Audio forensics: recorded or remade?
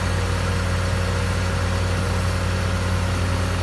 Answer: recorded